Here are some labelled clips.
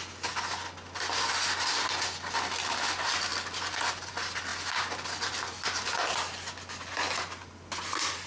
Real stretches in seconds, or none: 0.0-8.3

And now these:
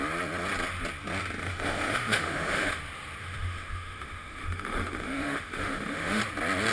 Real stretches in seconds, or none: 0.0-1.4; 2.8-3.2; 6.2-6.7

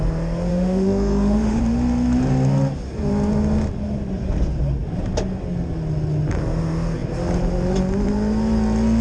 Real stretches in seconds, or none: 0.0-0.5; 1.6-9.0

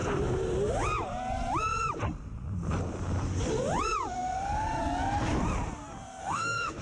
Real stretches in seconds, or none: 0.0-4.1; 4.8-6.2

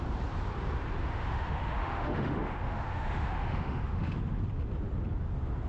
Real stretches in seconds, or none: 0.0-1.0; 4.4-5.7